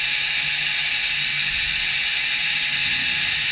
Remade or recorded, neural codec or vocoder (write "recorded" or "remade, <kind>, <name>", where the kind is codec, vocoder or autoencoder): recorded